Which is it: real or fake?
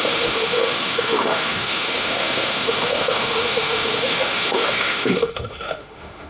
fake